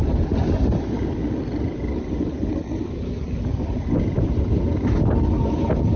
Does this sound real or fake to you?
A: real